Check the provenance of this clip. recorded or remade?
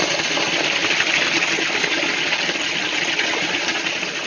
recorded